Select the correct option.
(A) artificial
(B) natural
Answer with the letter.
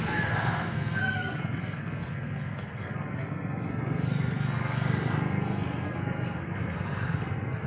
A